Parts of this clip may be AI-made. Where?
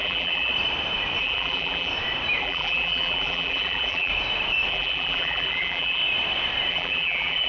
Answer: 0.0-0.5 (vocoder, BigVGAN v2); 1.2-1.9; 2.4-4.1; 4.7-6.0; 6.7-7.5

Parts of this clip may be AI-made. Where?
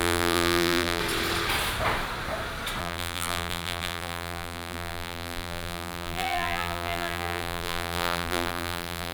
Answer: 0.0-1.0 (vocoder, BigVGAN v2); 2.8-9.1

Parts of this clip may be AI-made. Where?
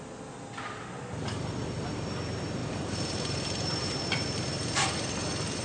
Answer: 2.6-5.1 (vocoder, BigVGAN v2)